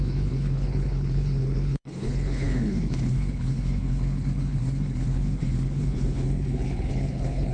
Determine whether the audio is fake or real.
fake